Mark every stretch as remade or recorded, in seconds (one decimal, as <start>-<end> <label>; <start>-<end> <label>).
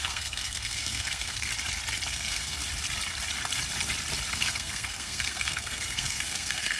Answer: 0.0-1.5 remade; 1.5-2.1 recorded; 2.1-2.6 remade; 2.6-4.3 recorded; 4.3-6.8 remade